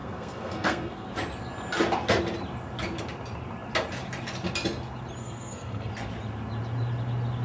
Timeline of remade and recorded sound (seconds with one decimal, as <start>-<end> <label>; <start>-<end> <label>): 0.0-1.1 remade; 1.1-5.2 recorded; 5.2-5.9 remade; 5.9-7.4 recorded